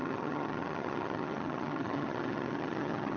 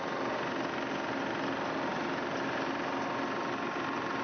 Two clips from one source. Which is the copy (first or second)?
first